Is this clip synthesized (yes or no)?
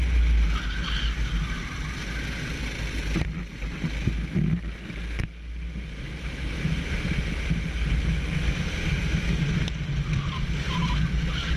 no